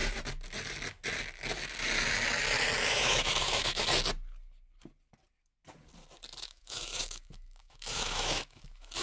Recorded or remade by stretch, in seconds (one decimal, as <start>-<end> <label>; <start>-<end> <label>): 0.0-2.9 recorded; 2.9-3.8 remade; 3.8-6.4 recorded; 6.4-9.0 remade